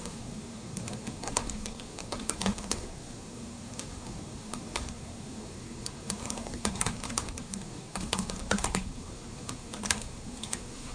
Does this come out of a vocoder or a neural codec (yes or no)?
yes